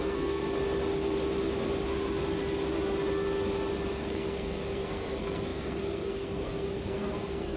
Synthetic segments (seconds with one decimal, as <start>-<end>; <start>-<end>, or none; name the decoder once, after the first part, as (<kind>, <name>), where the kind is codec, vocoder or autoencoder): 0.0-0.4 (codec, SNAC); 3.9-7.6